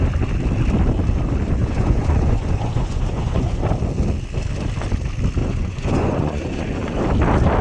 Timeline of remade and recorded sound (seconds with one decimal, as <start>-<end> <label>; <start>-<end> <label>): 0.0-1.6 recorded; 1.6-3.6 remade; 3.6-5.4 recorded; 5.4-7.0 remade; 7.0-7.6 recorded